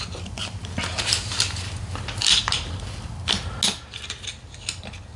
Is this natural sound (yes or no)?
yes